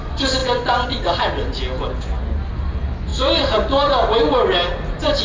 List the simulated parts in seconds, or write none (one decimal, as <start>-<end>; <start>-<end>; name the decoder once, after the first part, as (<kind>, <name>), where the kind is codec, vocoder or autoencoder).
none